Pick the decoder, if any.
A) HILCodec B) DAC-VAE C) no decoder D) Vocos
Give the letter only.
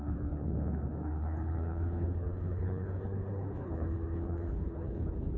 A